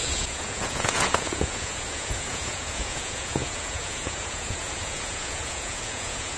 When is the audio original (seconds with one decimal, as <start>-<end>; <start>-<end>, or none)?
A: none